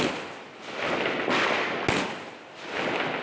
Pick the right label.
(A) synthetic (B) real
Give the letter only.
B